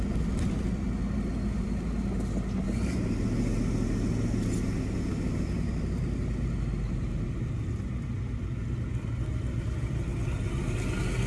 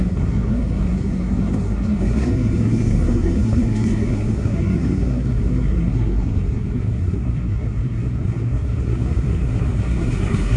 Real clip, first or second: first